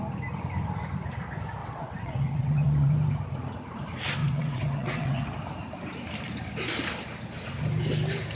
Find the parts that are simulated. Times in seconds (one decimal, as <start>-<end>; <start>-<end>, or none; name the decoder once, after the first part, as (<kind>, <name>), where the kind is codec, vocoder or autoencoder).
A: 1.6-2.9 (vocoder, WaveNeXt); 4.2-5.3